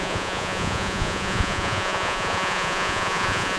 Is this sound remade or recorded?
remade